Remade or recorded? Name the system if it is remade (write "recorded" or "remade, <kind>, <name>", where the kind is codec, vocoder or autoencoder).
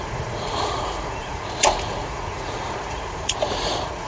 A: remade, vocoder, Vocos